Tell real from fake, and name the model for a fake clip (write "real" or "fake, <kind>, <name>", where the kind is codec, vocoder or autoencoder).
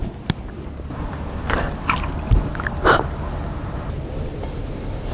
real